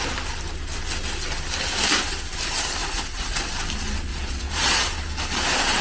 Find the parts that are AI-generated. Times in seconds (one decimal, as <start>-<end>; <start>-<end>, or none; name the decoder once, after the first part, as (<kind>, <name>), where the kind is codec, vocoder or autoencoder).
2.8-3.5 (vocoder, Vocos); 4.1-4.9